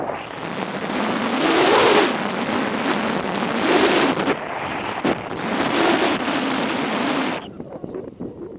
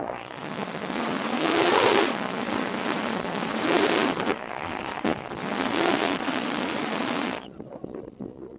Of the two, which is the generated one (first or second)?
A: second